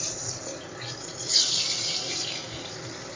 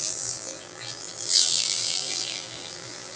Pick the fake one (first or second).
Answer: second